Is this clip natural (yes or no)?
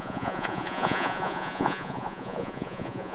no